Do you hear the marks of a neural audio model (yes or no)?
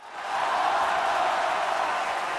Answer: yes